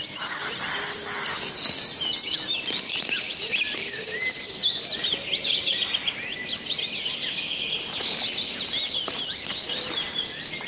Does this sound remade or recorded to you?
recorded